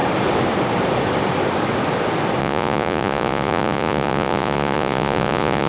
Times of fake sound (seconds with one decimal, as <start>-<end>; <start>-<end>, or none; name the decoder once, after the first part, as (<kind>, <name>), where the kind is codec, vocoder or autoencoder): 2.4-5.7 (vocoder, Vocos)